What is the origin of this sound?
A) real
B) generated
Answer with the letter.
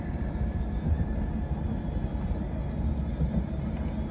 A